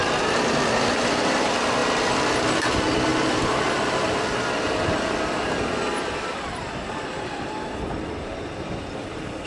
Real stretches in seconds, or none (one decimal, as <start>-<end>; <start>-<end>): 1.8-2.4